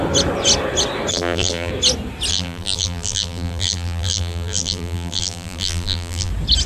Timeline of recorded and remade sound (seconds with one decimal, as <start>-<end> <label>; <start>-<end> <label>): 0.0-1.1 recorded; 1.1-1.7 remade; 1.7-2.3 recorded; 2.3-6.3 remade; 6.3-6.7 recorded